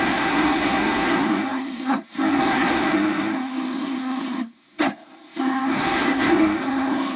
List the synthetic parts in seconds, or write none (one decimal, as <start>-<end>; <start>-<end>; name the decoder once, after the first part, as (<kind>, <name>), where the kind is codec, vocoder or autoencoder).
0.0-7.2 (codec, SNAC)